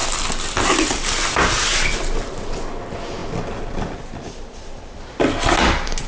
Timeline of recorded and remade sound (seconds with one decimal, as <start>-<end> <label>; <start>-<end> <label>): 0.0-6.1 recorded

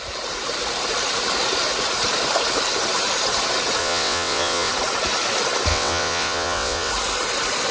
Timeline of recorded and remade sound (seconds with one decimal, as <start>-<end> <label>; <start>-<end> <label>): 0.0-3.8 recorded; 3.8-4.7 remade; 4.7-5.7 recorded; 5.7-6.9 remade; 6.9-7.7 recorded